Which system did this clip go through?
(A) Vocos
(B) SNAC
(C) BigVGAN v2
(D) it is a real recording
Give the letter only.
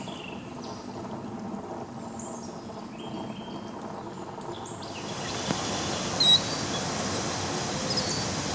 D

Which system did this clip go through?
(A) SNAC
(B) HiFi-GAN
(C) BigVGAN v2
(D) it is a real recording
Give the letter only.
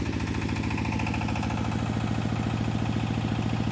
D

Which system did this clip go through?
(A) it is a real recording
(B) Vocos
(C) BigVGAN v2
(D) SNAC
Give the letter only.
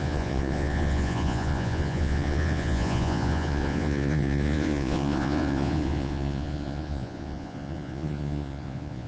B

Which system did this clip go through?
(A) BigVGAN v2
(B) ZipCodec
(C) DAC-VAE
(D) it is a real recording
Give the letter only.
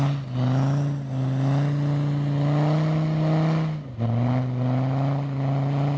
D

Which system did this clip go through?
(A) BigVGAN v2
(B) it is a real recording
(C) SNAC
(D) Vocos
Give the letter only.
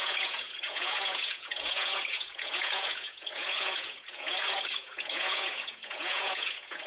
D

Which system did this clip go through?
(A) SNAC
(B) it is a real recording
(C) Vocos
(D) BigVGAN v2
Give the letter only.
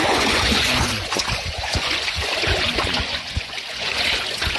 C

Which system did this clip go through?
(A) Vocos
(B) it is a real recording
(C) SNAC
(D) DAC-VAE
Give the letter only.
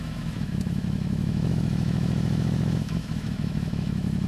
D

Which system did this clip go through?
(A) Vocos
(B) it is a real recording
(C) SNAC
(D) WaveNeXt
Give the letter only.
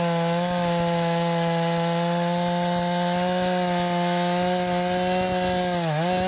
B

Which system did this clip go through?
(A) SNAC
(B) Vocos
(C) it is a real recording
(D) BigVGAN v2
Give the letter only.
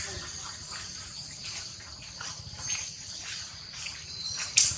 D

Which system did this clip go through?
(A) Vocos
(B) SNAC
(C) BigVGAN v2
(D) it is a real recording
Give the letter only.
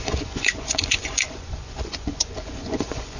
A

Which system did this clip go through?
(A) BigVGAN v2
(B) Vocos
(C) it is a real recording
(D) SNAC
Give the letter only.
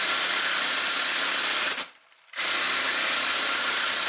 C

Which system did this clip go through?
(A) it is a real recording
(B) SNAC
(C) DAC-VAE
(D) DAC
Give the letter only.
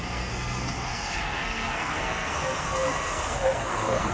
B